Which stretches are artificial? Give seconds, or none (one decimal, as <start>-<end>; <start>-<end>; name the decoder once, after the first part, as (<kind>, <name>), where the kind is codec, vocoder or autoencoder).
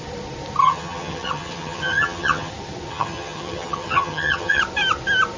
0.6-2.5 (vocoder, HiFi-GAN); 2.9-4.6